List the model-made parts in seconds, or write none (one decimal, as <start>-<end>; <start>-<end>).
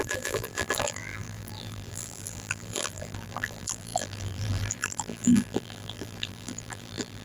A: 0.0-7.2